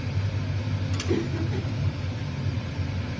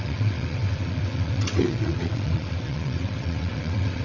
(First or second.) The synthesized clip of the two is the second